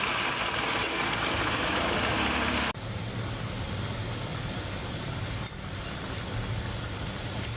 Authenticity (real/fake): real